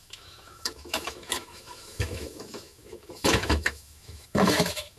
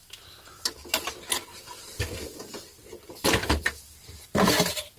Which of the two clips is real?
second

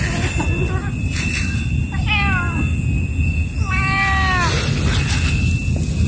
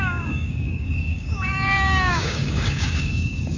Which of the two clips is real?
first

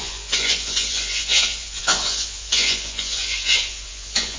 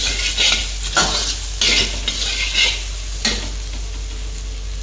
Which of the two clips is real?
second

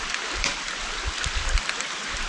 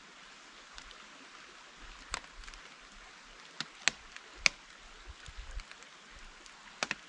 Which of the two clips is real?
second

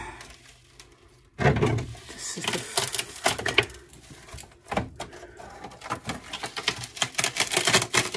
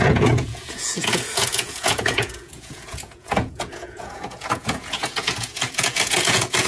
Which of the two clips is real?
first